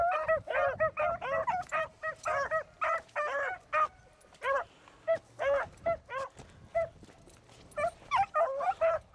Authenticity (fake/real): real